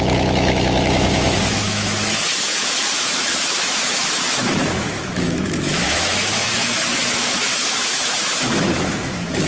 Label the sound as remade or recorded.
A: remade